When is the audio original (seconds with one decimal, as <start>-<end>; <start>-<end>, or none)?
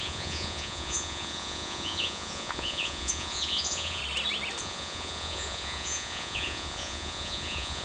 4.0-4.6